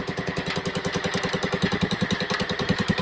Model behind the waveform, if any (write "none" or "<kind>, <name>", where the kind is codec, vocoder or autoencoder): vocoder, BigVGAN v2